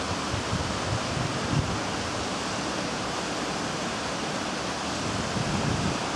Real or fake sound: real